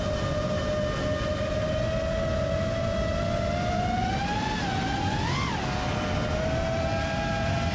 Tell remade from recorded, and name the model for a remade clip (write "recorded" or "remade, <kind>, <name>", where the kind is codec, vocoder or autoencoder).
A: recorded